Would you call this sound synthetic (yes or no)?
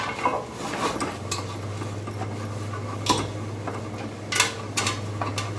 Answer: no